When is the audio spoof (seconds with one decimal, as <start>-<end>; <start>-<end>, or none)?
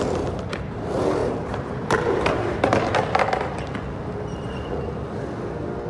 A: 1.2-2.9